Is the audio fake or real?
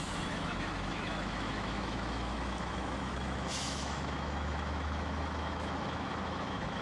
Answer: fake